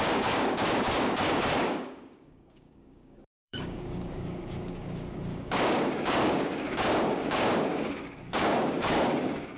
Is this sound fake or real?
fake